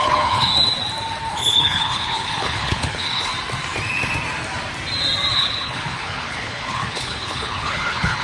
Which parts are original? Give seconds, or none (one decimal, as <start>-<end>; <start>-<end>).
0.5-1.3; 3.3-5.3